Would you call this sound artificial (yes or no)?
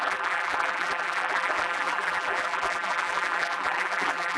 yes